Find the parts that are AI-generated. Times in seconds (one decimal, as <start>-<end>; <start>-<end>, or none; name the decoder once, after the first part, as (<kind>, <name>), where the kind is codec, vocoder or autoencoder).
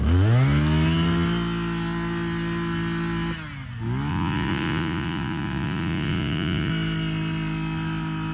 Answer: 4.1-6.7 (vocoder, Vocos)